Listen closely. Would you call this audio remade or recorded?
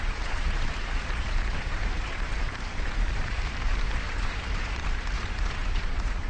remade